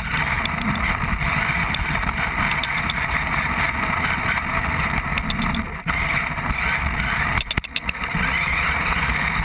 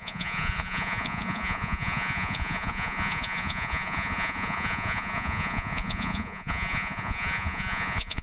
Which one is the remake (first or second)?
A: second